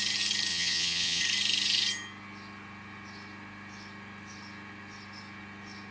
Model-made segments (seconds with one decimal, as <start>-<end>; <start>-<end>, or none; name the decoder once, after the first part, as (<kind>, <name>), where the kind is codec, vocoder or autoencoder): 0.5-1.2 (vocoder, Vocos)